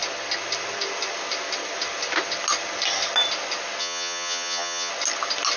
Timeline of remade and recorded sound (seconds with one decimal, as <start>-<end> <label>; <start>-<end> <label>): 0.0-3.8 recorded; 3.8-4.9 remade; 4.9-5.6 recorded